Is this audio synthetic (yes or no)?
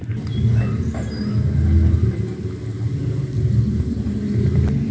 no